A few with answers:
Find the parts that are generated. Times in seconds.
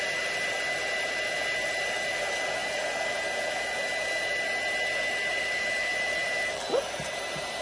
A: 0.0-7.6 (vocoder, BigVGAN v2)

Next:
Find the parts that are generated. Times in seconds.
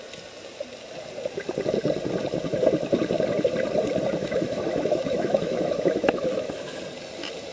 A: 4.2-6.8 (autoencoder, DAC-VAE)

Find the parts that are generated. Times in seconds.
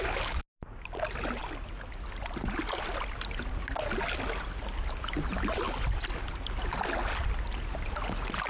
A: none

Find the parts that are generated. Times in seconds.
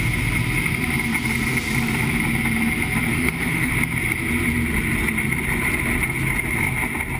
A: 3.1-3.7 (autoencoder, DAC-VAE)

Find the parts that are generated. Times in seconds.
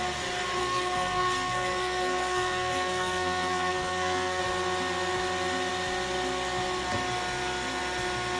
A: 0.6-4.4 (codec, SNAC)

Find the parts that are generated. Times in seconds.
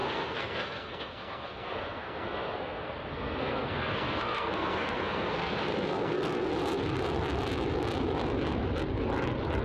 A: 0.0-6.5 (codec, SNAC)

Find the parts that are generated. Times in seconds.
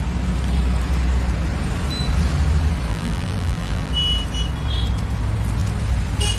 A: 2.9-3.9 (vocoder, BigVGAN v2)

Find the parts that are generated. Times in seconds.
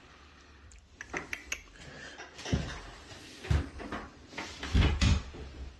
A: 0.0-1.4 (vocoder, BigVGAN v2); 4.9-5.8